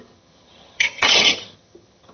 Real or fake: fake